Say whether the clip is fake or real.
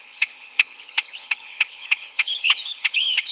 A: fake